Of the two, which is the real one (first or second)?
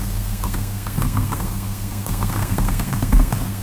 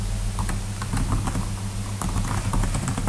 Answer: second